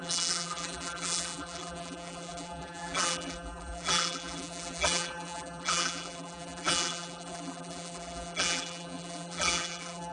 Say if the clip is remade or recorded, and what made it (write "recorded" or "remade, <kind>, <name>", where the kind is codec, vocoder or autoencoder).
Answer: remade, vocoder, BigVGAN v2